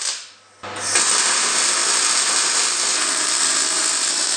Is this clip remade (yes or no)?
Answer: no